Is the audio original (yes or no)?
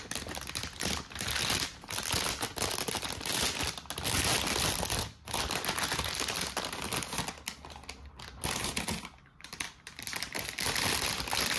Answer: yes